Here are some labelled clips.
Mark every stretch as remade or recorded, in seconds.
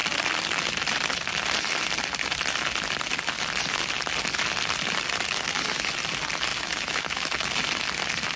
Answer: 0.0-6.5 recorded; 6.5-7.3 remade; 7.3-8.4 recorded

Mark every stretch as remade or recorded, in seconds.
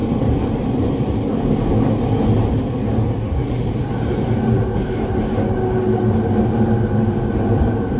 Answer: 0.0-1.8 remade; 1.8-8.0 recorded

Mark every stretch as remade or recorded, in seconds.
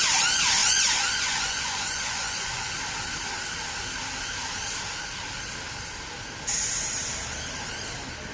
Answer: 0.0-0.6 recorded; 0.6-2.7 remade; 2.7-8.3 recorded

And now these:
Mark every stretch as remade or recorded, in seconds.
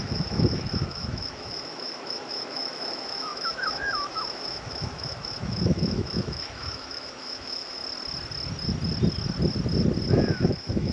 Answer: 0.0-7.8 remade; 7.8-10.1 recorded; 10.1-10.9 remade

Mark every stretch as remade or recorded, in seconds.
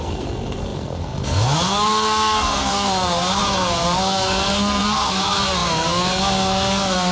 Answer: 0.0-7.1 remade